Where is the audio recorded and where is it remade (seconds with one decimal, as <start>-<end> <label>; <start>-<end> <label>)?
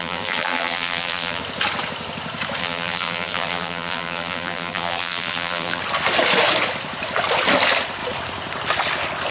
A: 0.0-1.4 remade; 1.4-2.6 recorded; 2.6-5.8 remade; 5.8-9.3 recorded